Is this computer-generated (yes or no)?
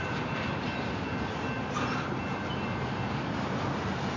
no